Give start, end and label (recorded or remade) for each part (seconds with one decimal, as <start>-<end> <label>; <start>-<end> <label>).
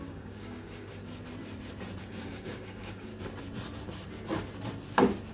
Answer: 0.0-1.0 remade; 1.0-2.0 recorded; 2.0-3.1 remade; 3.1-5.3 recorded